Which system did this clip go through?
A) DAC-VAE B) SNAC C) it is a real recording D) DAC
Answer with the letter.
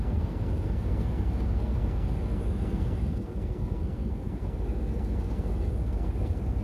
B